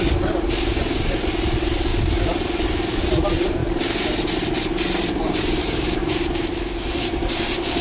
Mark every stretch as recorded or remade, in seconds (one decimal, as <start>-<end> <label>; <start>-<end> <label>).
0.0-5.6 recorded; 5.6-6.5 remade; 6.5-7.8 recorded